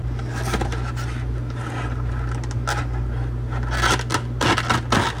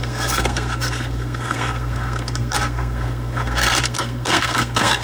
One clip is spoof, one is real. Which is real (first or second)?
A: first